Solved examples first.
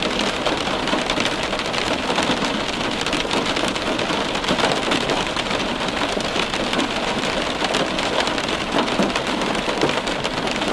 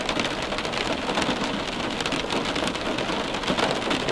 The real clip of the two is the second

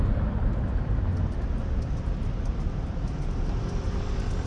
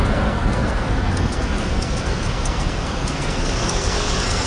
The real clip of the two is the first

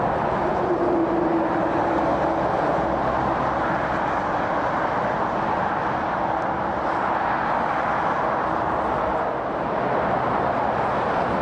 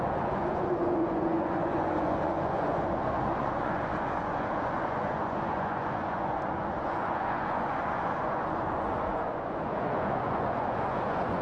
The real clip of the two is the first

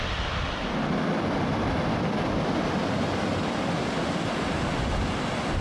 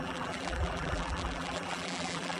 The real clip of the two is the first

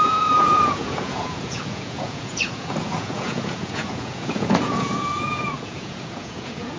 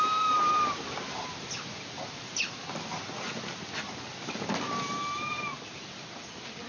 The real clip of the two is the second